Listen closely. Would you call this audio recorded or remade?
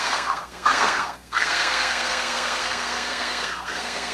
remade